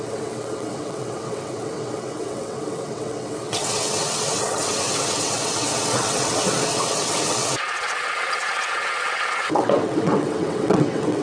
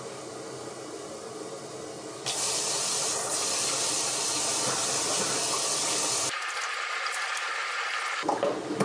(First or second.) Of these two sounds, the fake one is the first